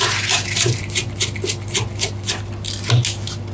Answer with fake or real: real